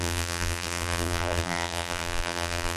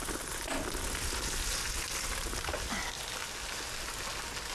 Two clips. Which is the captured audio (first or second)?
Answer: second